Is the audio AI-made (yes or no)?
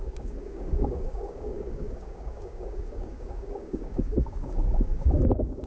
yes